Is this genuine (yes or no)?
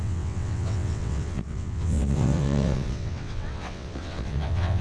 no